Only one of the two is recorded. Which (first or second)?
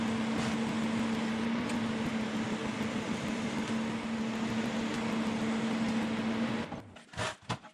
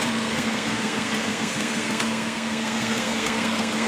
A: first